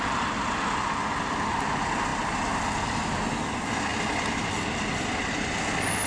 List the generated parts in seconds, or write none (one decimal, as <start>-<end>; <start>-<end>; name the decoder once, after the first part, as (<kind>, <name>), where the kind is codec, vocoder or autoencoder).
none